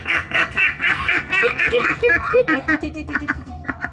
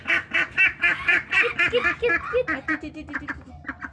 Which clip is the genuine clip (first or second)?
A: second